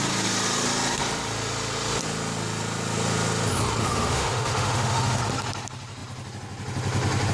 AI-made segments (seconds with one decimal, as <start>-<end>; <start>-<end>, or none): 3.8-5.2